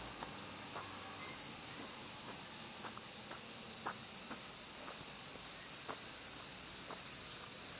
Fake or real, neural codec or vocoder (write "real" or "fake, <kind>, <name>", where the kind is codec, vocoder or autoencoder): real